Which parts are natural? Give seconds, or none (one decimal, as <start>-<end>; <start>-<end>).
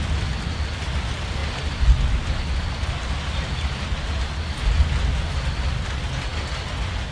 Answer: 0.0-7.1